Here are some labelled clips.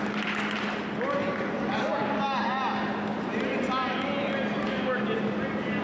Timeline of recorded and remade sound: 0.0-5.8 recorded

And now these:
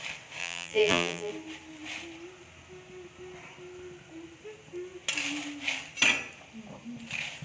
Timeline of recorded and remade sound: 0.0-0.4 recorded; 0.4-1.3 remade; 1.3-7.4 recorded

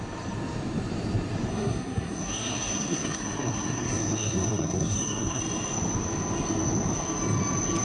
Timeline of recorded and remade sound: 0.0-1.5 recorded; 1.5-5.4 remade; 5.4-7.8 recorded

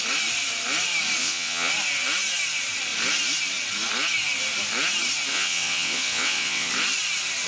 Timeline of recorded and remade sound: 0.0-1.2 recorded; 1.2-1.7 remade; 1.7-5.3 recorded; 5.3-6.7 remade; 6.7-7.5 recorded